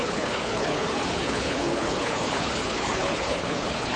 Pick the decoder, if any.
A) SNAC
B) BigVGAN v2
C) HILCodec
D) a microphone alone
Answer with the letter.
C